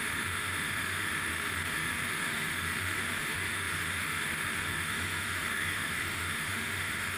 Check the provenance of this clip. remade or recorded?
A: remade